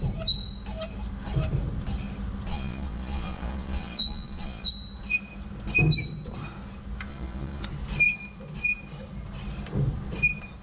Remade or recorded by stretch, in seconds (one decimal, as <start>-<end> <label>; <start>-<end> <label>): 0.0-2.5 recorded; 2.5-4.7 remade; 4.7-7.1 recorded; 7.1-7.6 remade; 7.6-10.6 recorded